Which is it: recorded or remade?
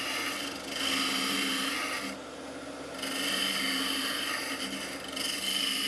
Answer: recorded